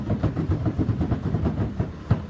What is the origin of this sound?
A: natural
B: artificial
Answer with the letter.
A